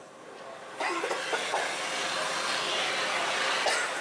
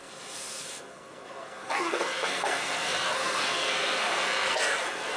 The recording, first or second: first